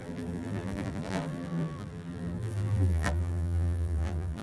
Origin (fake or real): fake